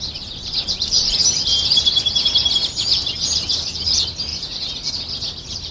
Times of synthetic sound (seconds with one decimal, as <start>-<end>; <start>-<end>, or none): none